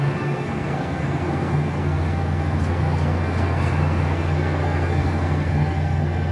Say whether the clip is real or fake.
fake